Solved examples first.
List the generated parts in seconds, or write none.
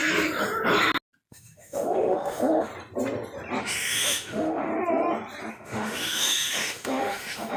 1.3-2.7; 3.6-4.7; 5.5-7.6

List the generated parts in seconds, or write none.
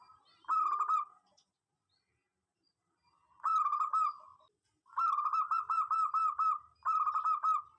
none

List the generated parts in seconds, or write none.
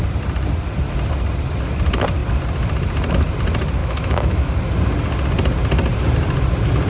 3.8-4.5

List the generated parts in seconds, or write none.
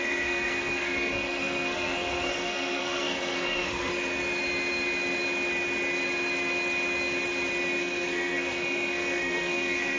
0.0-3.9; 7.8-10.0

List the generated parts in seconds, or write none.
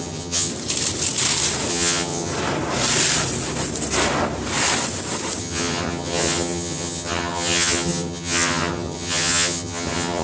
0.0-0.5; 1.7-2.3; 5.4-10.2